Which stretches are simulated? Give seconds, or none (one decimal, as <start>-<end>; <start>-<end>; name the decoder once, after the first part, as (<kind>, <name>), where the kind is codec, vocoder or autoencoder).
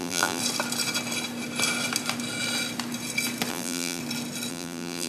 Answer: 0.0-0.4 (vocoder, BigVGAN v2); 3.5-4.0; 4.5-5.1